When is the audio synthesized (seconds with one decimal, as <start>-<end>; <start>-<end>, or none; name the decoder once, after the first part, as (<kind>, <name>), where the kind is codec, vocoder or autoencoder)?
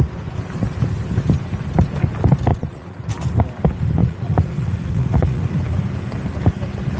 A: 2.5-3.1 (vocoder, Vocos); 4.0-5.6